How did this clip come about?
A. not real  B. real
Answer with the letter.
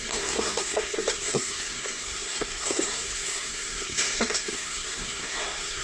A